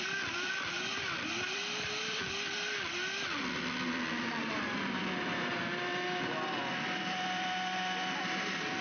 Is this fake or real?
fake